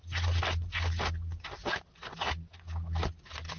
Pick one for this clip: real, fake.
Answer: real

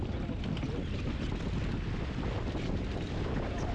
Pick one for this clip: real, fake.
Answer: real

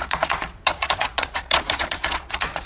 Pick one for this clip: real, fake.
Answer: fake